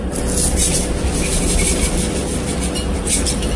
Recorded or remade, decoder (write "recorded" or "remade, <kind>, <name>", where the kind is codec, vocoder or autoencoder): recorded